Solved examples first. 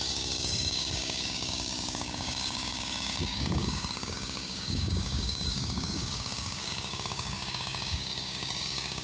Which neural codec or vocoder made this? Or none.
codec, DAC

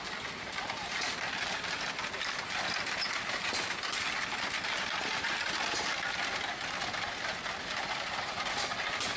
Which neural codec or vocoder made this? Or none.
none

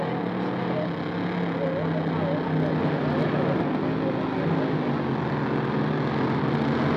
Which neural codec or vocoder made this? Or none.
none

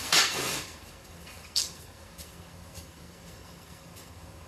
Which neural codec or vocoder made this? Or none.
codec, SNAC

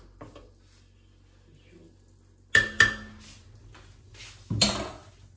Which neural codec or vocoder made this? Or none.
none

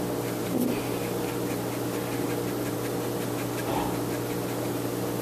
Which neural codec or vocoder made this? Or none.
none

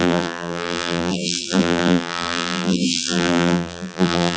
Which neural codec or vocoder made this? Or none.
vocoder, BigVGAN v2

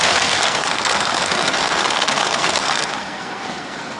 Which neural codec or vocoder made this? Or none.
codec, SNAC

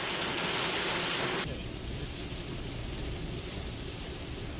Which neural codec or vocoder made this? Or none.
none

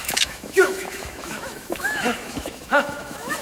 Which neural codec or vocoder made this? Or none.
autoencoder, DAC-VAE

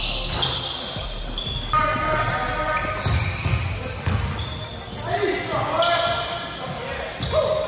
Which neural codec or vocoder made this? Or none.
none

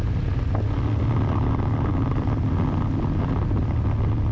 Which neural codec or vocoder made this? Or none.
none